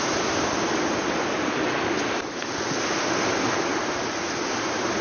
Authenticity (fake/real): real